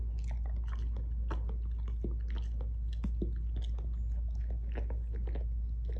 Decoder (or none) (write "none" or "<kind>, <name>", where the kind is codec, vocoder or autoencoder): none